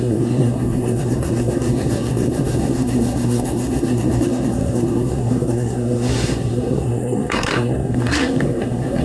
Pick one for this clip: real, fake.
fake